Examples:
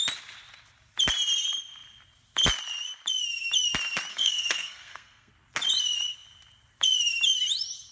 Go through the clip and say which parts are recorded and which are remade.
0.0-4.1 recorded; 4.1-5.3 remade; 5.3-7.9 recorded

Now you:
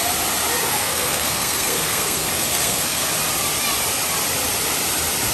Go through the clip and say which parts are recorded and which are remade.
0.0-0.6 recorded; 0.6-3.1 remade; 3.1-5.3 recorded